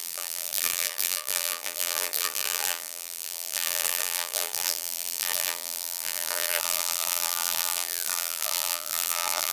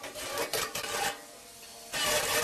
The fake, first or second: first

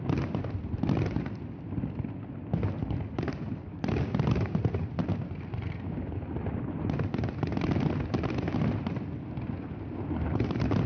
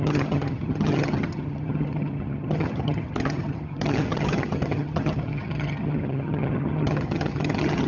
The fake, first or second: second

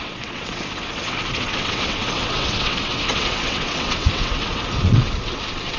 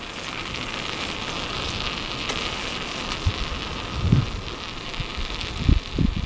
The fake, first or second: first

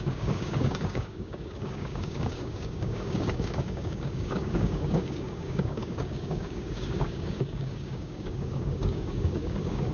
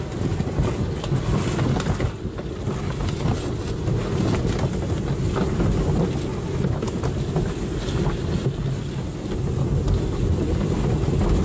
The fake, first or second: first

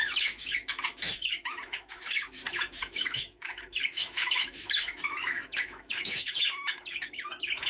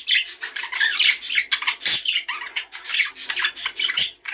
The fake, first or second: first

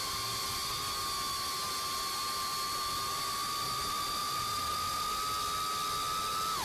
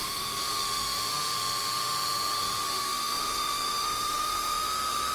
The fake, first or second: second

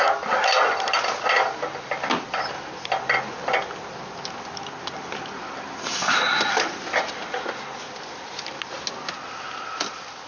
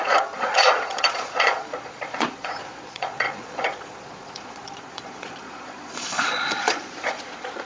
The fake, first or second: second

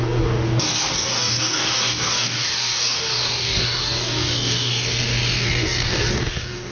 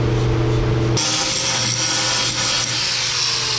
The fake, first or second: first